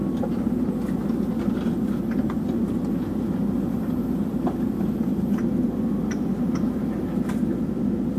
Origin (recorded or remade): recorded